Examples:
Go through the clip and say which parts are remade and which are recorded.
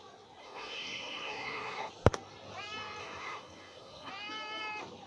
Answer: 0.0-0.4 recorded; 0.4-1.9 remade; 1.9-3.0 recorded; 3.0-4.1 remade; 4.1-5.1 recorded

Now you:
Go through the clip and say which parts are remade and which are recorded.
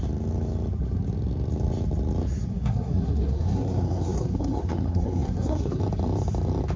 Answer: 0.0-2.5 recorded; 2.5-5.8 remade; 5.8-6.8 recorded